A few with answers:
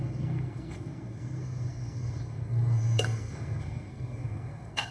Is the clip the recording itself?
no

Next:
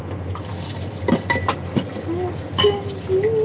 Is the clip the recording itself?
yes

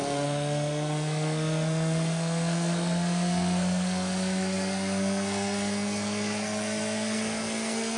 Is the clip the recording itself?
no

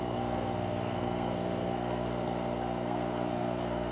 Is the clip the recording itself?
no